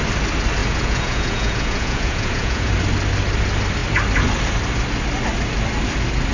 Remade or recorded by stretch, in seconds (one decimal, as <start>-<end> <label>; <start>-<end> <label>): 0.0-0.6 recorded; 0.6-2.7 remade; 2.7-6.3 recorded